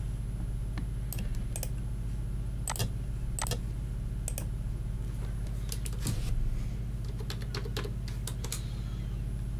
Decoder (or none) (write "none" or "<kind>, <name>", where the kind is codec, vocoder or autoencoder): none